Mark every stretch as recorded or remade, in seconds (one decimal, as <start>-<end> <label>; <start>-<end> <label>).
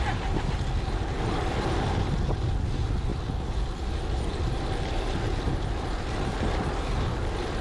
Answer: 0.0-7.6 recorded